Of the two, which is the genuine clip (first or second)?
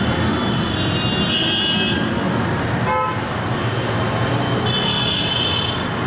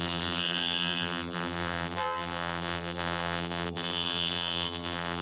first